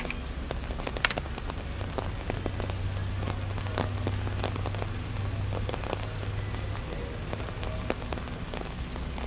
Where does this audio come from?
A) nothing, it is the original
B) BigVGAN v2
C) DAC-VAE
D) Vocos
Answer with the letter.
A